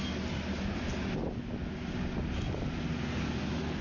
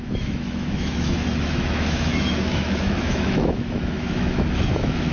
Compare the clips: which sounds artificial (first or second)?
second